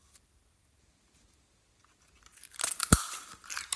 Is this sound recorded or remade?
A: recorded